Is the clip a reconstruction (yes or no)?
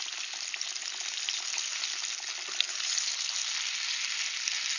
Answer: no